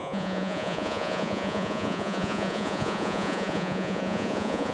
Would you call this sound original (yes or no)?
no